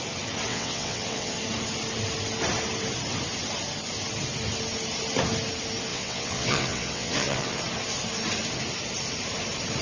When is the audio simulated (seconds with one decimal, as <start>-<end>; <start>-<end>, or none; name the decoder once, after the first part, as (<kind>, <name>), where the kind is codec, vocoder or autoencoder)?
0.5-1.4 (vocoder, WaveNeXt); 5.9-7.6